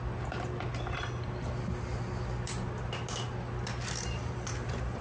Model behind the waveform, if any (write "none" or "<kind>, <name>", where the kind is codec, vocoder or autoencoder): none